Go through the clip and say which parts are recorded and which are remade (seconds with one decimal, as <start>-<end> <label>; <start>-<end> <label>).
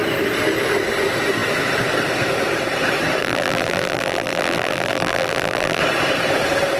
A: 0.0-3.2 recorded; 3.2-5.8 remade; 5.8-6.8 recorded